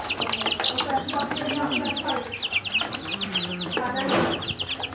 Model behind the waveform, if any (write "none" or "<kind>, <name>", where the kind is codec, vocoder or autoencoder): none